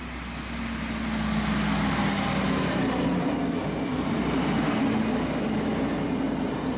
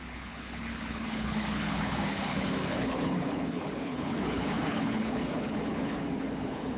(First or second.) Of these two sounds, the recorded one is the first